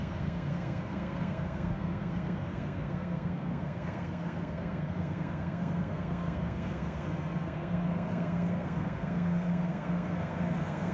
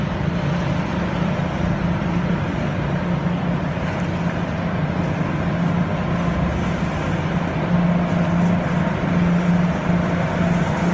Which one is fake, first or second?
first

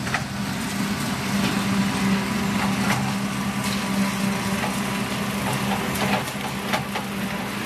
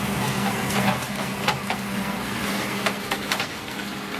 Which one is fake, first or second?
second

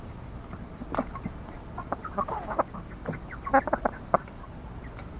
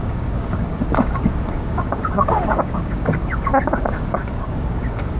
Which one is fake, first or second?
second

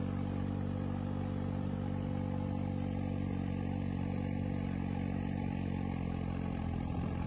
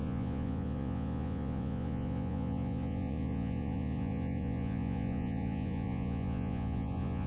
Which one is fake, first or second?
second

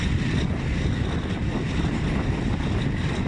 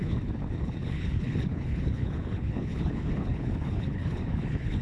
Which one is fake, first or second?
second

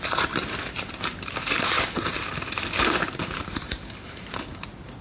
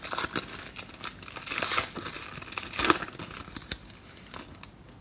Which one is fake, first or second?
first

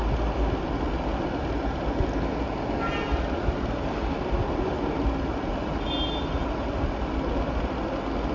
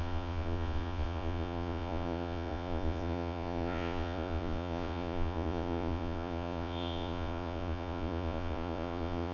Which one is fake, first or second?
second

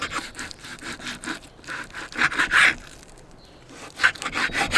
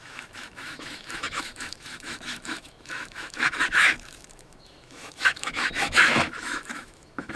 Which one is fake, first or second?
second